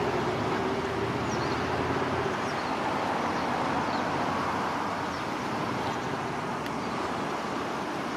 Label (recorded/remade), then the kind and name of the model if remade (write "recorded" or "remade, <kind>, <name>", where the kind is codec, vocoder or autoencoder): recorded